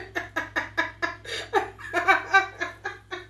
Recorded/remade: recorded